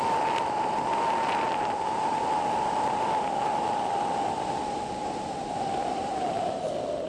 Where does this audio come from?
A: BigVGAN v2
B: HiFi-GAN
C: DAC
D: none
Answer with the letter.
A